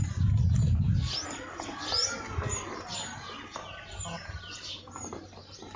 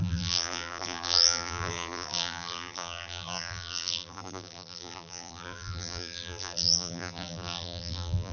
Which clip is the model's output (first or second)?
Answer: second